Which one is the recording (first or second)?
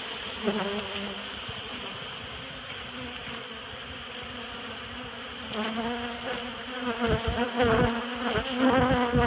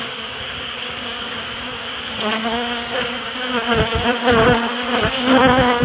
first